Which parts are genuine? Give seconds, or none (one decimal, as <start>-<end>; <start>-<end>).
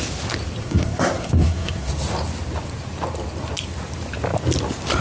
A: 0.0-0.6; 1.9-5.0